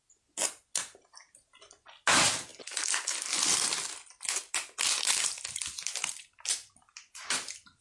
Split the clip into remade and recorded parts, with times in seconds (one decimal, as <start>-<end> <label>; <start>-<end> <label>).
0.0-7.8 recorded